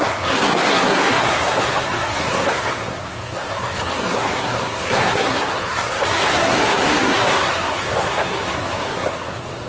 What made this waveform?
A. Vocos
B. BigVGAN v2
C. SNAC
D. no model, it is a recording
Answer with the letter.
C